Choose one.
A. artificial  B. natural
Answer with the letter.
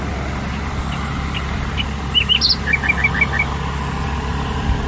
B